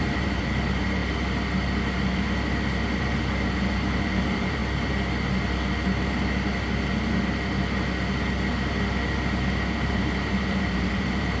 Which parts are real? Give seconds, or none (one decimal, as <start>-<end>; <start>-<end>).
1.0-3.7; 4.6-9.8